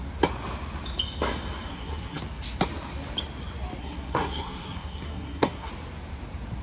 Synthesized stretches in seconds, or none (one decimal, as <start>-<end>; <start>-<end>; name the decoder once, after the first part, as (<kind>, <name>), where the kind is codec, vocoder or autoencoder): 1.7-2.2 (codec, SNAC); 3.8-5.7